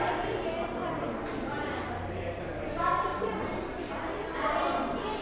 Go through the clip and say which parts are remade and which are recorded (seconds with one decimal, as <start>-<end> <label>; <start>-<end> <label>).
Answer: 0.0-3.1 recorded; 3.1-4.1 remade; 4.1-5.2 recorded